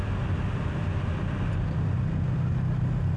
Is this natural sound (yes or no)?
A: yes